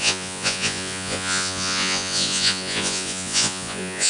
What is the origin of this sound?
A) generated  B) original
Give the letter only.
A